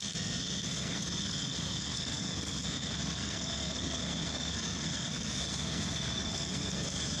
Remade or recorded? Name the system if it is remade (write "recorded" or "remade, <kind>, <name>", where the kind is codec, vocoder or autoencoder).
remade, codec, SNAC